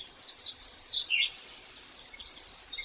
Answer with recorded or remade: recorded